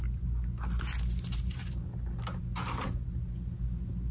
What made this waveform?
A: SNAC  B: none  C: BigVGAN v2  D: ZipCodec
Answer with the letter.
B